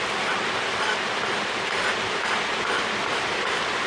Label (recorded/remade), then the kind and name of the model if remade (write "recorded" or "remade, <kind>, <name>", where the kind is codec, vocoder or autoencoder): recorded